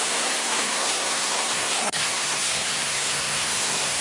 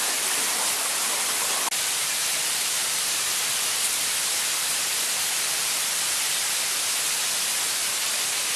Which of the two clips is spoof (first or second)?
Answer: first